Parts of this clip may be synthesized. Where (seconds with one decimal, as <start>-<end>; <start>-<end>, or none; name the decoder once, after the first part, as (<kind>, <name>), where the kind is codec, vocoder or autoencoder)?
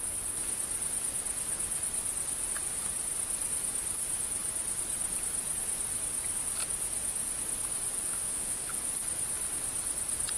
8.1-8.7 (autoencoder, DAC-VAE)